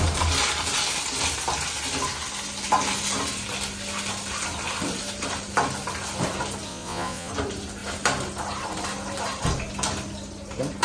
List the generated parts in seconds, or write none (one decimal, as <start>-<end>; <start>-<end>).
6.7-7.3